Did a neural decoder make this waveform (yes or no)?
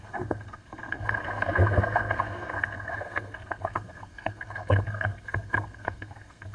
yes